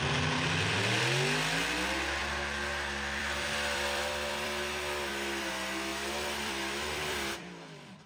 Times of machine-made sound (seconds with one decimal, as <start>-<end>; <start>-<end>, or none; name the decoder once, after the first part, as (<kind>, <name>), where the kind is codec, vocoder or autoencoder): 2.2-5.5 (vocoder, BigVGAN v2); 5.9-8.1